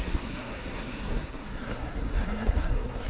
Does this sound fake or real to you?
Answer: fake